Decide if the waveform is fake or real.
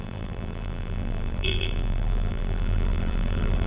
fake